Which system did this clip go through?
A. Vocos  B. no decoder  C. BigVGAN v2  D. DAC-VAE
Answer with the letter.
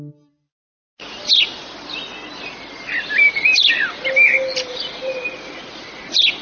B